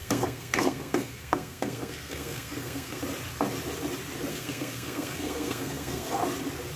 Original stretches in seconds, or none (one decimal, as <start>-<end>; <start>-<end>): 3.0-4.3; 6.2-6.8

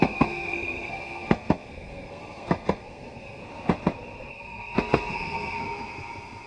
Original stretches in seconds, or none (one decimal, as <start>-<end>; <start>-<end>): 3.4-4.3; 5.6-6.5

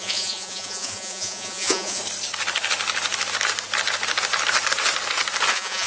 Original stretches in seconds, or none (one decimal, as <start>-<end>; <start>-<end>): 2.0-5.5

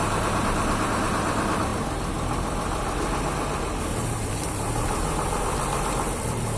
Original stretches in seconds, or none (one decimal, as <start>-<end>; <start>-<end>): 0.0-6.6

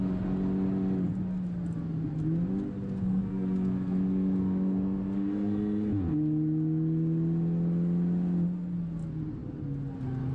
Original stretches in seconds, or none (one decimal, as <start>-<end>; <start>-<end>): 0.0-3.0; 5.9-10.3

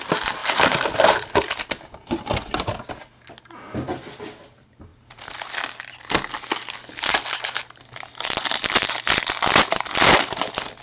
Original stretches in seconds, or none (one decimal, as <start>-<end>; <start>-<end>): 0.0-10.8

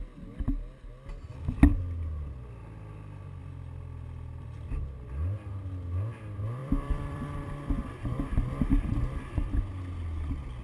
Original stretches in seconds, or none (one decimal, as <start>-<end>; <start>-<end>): 0.0-3.4; 4.7-6.6; 9.6-10.6

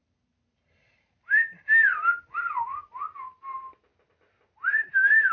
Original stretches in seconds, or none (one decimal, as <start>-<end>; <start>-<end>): 3.0-5.3